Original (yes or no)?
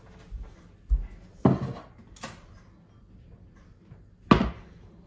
yes